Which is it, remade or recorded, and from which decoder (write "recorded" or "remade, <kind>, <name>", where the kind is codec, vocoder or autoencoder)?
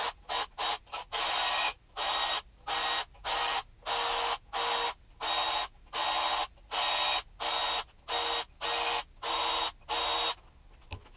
recorded